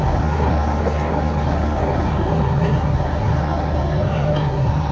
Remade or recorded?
remade